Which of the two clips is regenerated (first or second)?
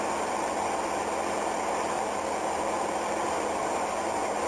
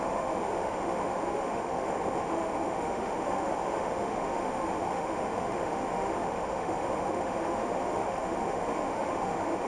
second